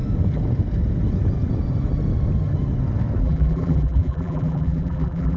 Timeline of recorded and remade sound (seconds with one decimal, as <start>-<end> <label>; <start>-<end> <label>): 0.0-3.2 recorded; 3.2-5.4 remade